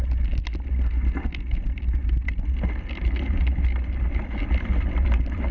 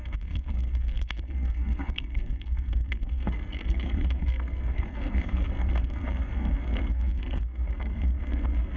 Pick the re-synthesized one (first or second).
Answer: second